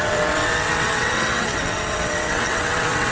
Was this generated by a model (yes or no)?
yes